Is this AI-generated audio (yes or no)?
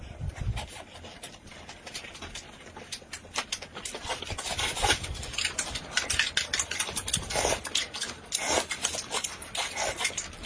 no